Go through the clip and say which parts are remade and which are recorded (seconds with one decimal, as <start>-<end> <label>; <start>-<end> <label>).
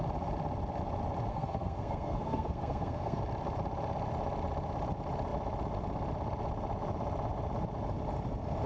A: 0.0-1.3 recorded; 1.3-3.2 remade; 3.2-8.7 recorded